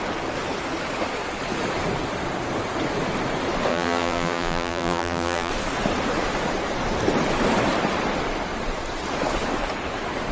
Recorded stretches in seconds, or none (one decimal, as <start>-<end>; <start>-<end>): 0.0-3.7; 5.5-10.3